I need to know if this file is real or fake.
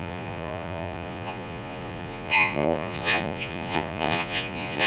fake